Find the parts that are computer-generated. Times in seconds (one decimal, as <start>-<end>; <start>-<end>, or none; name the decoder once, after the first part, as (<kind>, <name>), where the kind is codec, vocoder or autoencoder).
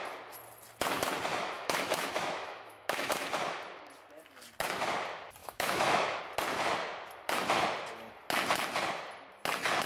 1.3-3.1 (autoencoder, DAC-VAE); 5.4-6.2